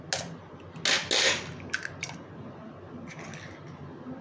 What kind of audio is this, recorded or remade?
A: recorded